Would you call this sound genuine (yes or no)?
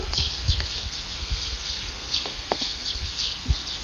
no